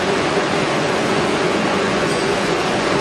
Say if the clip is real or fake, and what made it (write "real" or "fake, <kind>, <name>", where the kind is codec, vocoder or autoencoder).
fake, vocoder, Vocos